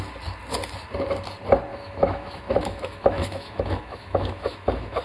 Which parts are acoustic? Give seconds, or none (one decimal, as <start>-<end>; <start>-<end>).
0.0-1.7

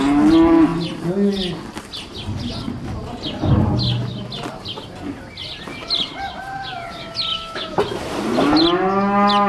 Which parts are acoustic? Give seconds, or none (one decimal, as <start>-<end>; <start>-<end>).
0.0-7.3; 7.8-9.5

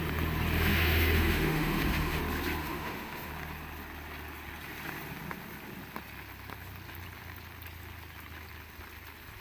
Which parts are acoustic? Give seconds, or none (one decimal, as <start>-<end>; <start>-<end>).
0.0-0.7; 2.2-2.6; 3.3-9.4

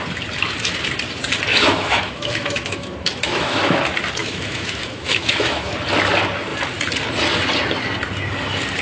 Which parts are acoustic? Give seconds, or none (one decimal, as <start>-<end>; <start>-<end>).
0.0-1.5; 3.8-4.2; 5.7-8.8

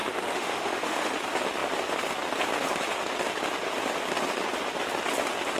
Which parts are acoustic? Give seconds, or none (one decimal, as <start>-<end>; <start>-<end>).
1.1-5.6

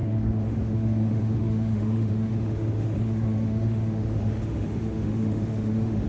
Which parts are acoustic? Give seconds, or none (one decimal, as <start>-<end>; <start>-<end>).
none